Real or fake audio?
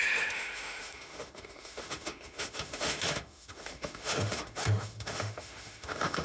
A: fake